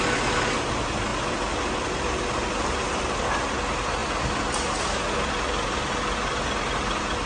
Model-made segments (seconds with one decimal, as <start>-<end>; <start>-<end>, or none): none